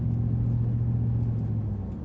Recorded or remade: recorded